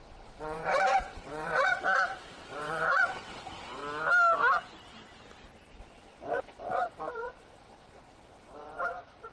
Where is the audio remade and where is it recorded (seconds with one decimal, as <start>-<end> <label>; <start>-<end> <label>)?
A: 0.0-3.8 remade; 3.8-5.8 recorded; 5.8-9.3 remade